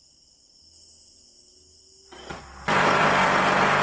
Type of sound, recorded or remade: recorded